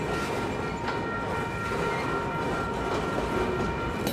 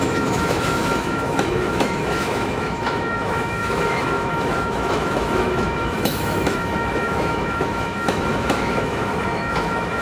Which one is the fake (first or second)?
second